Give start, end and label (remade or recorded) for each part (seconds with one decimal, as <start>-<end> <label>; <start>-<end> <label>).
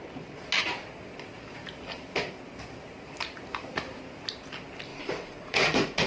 0.0-4.9 recorded; 4.9-6.1 remade